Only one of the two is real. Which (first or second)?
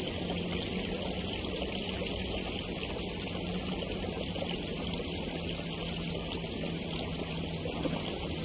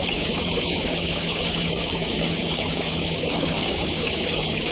first